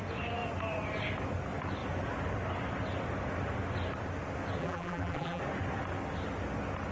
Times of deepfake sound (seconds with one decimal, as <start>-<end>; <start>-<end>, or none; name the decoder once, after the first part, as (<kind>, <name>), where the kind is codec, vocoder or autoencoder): 4.6-5.4 (vocoder, BigVGAN v2)